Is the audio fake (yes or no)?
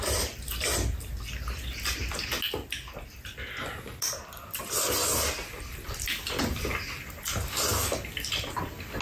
no